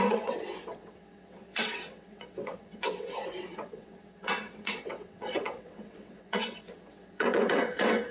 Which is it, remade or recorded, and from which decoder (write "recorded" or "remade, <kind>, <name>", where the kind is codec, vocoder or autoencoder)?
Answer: remade, vocoder, WaveNeXt